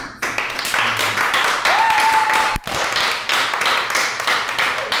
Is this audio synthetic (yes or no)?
no